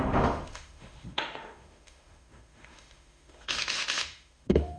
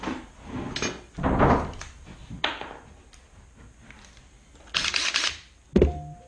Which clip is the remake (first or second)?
first